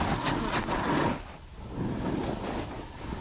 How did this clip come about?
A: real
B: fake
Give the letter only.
A